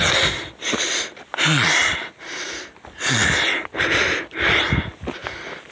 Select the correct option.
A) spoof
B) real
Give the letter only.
B